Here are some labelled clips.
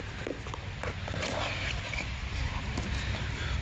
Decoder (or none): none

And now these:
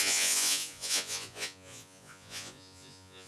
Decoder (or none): vocoder, Vocos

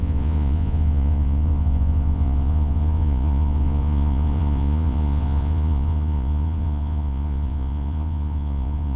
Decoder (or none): vocoder, Vocos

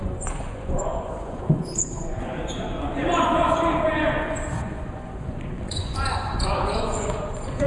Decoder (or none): vocoder, Vocos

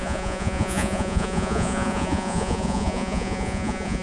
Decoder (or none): vocoder, Vocos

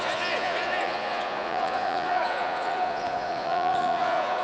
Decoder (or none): vocoder, Vocos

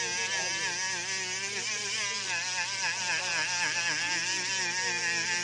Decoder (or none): none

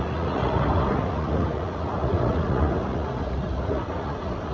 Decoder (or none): vocoder, Vocos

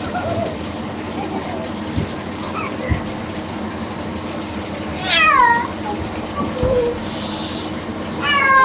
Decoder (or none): none